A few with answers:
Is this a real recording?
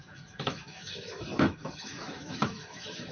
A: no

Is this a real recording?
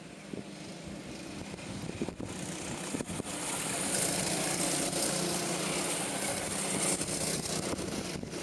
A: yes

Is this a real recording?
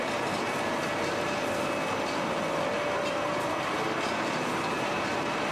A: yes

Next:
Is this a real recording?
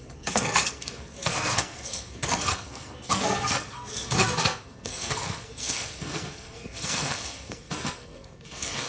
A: no